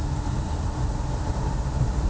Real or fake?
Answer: real